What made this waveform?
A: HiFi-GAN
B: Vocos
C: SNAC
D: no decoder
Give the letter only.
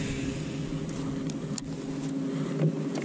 D